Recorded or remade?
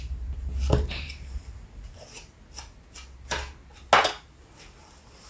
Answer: recorded